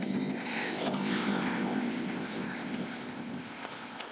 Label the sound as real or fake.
fake